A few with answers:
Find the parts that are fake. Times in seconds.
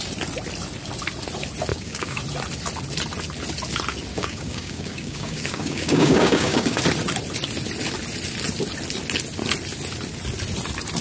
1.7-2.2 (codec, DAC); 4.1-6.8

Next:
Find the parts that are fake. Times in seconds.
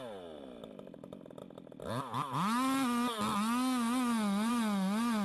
none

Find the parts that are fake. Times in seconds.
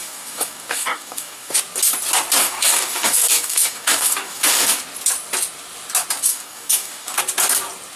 0.0-1.6 (codec, DAC); 2.4-4.8; 6.3-7.2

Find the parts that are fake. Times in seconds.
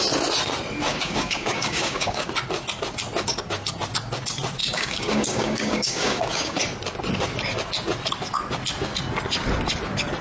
0.9-2.3 (codec, DAC); 4.6-6.6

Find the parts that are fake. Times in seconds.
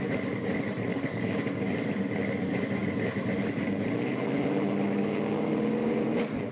0.9-1.7 (codec, DAC); 5.0-5.9